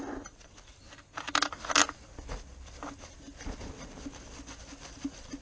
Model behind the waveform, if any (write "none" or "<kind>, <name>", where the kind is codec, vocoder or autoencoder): none